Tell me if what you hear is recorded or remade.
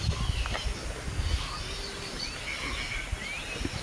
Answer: recorded